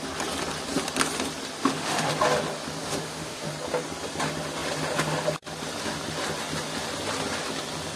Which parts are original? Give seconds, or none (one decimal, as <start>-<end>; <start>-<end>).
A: 0.0-1.6; 2.1-2.8; 3.5-8.0